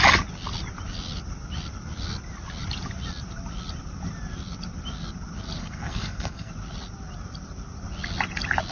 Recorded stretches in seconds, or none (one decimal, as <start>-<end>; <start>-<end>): 0.0-5.6; 6.5-8.7